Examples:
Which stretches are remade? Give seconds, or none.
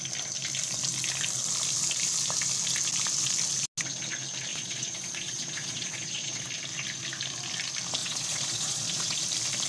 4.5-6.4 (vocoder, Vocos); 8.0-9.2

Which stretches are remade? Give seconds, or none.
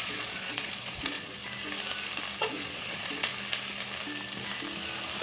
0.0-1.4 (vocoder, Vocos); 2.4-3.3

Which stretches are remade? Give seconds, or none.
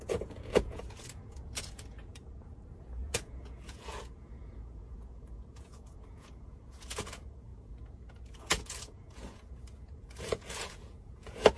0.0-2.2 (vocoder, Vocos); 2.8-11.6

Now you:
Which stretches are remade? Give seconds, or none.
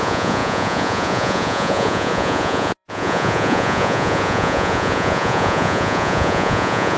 0.0-7.0 (vocoder, Vocos)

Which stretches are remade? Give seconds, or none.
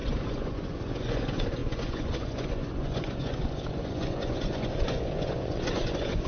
0.0-6.3 (vocoder, Vocos)